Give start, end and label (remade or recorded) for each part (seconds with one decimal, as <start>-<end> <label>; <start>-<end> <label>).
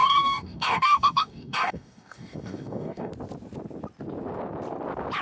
0.0-3.1 remade; 3.1-5.2 recorded